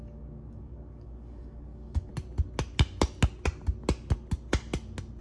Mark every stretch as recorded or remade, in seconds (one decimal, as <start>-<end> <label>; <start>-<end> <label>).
0.0-2.1 remade; 2.1-5.2 recorded